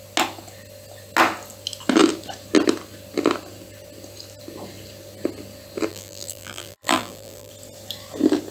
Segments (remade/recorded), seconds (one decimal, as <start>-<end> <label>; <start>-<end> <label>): 0.0-5.9 recorded; 5.9-7.5 remade; 7.5-8.5 recorded